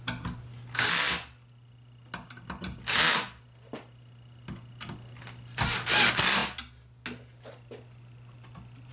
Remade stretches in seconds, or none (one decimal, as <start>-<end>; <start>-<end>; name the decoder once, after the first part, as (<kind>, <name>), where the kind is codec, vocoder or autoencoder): none